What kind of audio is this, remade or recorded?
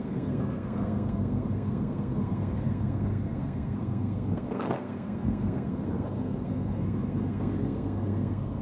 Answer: remade